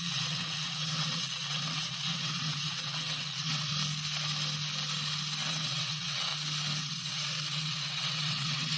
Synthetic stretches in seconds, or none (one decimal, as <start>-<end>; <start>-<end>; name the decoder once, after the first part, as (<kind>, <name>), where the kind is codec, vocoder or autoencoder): 0.0-3.7 (vocoder, WaveNeXt); 5.5-6.3; 6.8-8.8